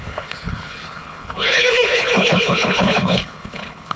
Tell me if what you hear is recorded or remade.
remade